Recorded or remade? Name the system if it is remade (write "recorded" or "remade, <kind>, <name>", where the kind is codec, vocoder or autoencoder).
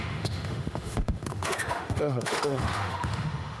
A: remade, autoencoder, DAC-VAE